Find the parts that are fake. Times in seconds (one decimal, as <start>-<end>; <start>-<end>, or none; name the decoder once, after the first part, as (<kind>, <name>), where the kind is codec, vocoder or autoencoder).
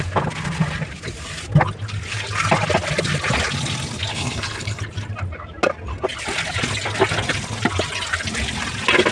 4.1-4.8 (codec, HILCodec)